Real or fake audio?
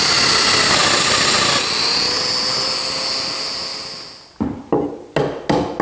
real